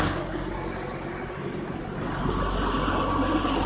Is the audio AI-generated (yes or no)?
no